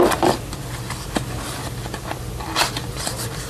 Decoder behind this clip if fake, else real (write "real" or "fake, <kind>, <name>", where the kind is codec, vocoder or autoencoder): fake, vocoder, BigVGAN v2